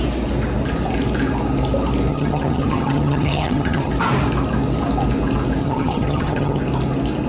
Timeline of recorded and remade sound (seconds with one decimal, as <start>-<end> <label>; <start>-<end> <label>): 0.0-2.1 recorded; 2.1-3.9 remade; 3.9-5.6 recorded; 5.6-6.6 remade; 6.6-7.3 recorded

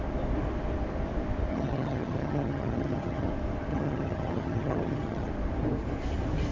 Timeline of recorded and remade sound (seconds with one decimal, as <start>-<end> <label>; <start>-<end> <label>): 0.0-1.5 recorded; 1.5-3.3 remade; 3.3-3.7 recorded; 3.7-5.3 remade; 5.3-6.5 recorded

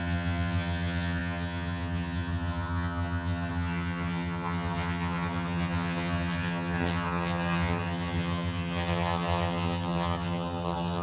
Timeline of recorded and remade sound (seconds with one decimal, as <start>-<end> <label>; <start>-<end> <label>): 0.0-11.0 remade

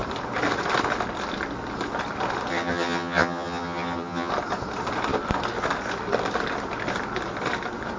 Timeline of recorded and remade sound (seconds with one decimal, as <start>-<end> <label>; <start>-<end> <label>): 0.0-2.5 recorded; 2.5-4.3 remade; 4.3-8.0 recorded